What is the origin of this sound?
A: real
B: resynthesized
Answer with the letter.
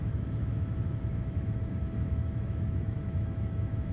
B